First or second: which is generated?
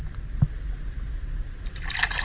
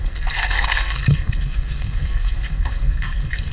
second